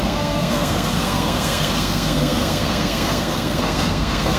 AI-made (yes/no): yes